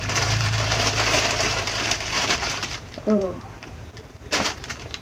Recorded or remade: remade